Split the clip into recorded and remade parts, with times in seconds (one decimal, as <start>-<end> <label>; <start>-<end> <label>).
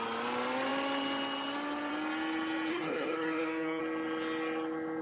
0.0-2.7 recorded; 2.7-3.8 remade; 3.8-5.0 recorded